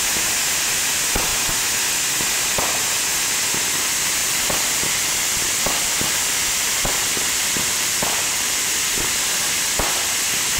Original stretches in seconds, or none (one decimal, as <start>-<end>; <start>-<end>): 0.0-4.2; 9.0-10.6